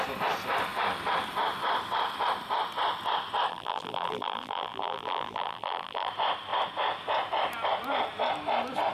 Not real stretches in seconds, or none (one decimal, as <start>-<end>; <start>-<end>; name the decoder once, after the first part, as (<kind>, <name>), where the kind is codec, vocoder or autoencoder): 3.5-6.1 (vocoder, BigVGAN v2)